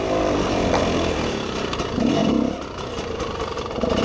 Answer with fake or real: fake